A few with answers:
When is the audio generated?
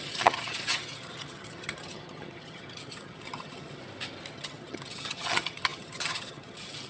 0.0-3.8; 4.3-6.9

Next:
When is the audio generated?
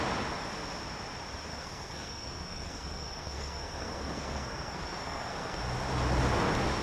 1.5-5.6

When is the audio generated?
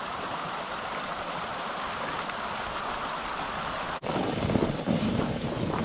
none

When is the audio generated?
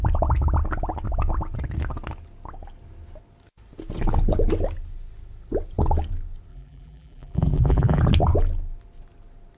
6.5-8.0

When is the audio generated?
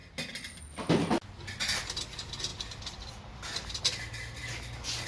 2.5-3.8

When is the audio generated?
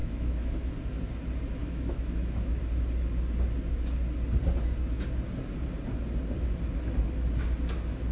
0.0-0.7; 1.6-2.6